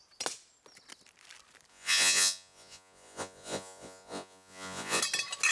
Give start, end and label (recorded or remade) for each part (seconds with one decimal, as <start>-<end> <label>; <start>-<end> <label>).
0.0-1.7 recorded; 1.7-5.0 remade; 5.0-5.5 recorded